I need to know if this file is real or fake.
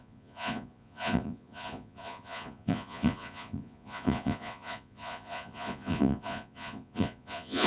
fake